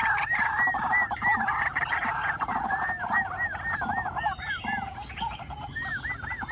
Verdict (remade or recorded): recorded